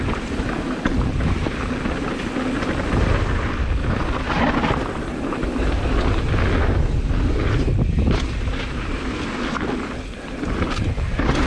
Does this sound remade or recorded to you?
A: recorded